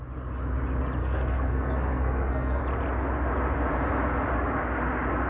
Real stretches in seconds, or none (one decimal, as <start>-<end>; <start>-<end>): 0.0-1.0; 2.6-5.3